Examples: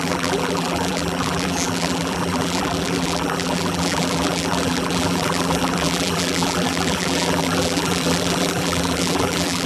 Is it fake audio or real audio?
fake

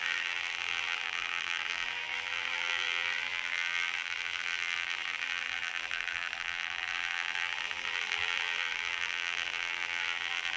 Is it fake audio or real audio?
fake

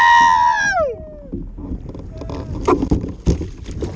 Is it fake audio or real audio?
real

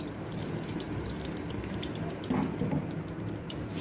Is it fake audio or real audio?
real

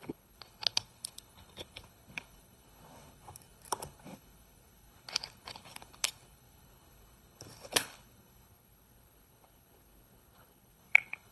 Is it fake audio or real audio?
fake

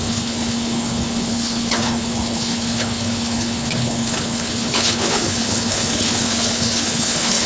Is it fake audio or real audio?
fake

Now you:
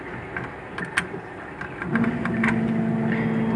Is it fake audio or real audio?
real